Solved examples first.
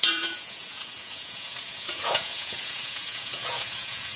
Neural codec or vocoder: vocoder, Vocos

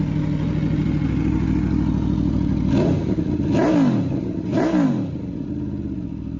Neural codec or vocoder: none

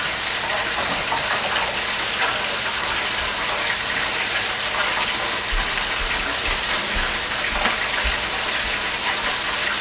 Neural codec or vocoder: none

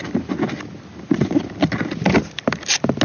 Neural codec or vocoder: none